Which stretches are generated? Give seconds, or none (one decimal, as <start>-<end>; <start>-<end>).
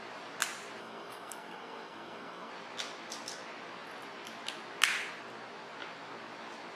0.8-2.5